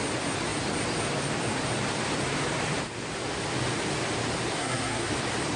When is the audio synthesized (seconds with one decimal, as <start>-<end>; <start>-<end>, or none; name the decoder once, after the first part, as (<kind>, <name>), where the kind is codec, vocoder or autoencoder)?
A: 4.5-5.1 (codec, SNAC)